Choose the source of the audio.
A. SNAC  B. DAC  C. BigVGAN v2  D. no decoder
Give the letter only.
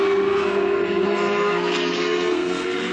A